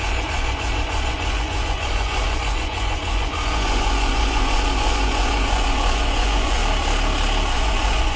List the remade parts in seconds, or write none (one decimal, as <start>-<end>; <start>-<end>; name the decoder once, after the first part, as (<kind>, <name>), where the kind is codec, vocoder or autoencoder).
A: 0.0-6.6 (vocoder, Vocos); 7.5-8.2